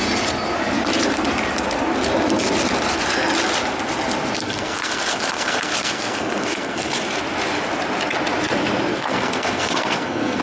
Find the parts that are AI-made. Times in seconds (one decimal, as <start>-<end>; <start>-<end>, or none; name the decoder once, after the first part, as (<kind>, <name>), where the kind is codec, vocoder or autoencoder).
4.4-7.2 (codec, SNAC); 8.9-10.4

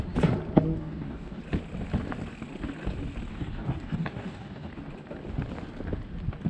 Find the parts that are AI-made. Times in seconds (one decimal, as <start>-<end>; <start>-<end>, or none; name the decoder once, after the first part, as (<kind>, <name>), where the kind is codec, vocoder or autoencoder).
0.7-1.4 (codec, DAC); 3.3-4.7